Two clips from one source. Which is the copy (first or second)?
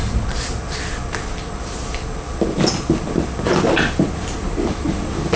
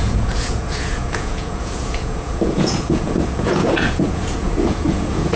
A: second